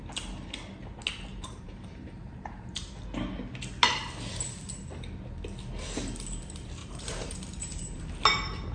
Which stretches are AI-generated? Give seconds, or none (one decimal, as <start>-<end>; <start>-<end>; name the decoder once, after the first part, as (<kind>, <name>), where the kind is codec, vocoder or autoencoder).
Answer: 1.3-2.8 (vocoder, BigVGAN v2); 6.8-8.0